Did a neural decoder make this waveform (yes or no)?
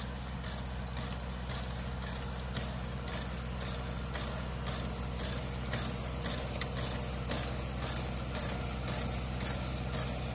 yes